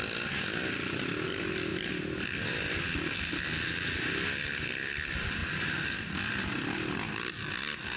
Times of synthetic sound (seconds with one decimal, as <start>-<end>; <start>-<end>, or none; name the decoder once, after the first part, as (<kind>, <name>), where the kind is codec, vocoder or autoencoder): none